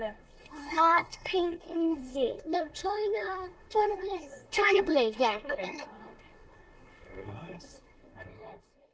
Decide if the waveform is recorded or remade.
remade